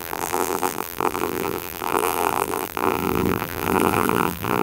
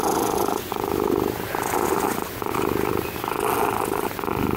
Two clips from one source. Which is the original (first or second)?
second